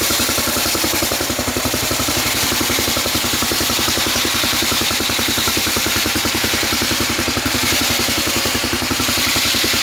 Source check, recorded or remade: remade